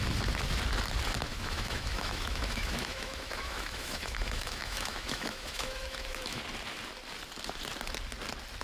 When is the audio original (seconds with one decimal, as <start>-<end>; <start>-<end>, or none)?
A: 0.0-1.3; 6.4-8.6